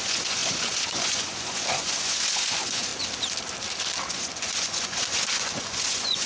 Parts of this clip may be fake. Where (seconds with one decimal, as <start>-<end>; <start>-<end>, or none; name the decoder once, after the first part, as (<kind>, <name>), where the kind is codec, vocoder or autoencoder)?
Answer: 0.0-2.9 (vocoder, Vocos); 4.1-6.3